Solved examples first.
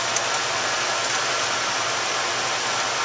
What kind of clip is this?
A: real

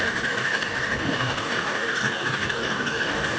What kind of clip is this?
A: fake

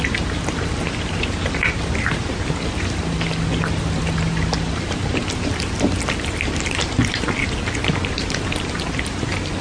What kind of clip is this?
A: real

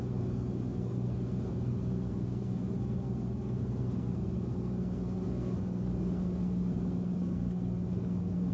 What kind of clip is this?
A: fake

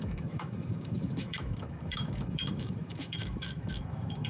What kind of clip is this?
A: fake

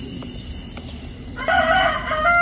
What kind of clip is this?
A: real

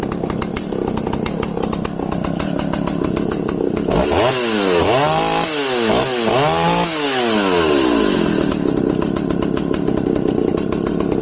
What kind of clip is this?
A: real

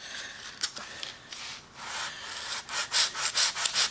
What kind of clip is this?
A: real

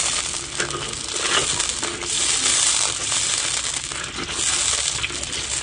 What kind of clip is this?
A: real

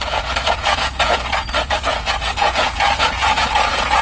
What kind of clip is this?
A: fake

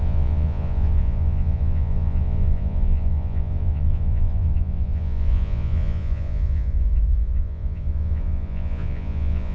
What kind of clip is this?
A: fake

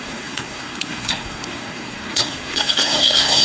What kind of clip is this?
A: fake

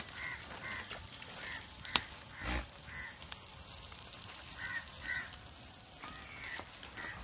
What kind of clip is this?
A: real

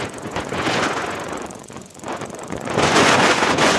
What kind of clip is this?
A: fake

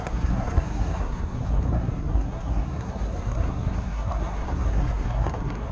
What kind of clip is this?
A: fake